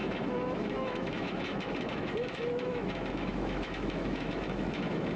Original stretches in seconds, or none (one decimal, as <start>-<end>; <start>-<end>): none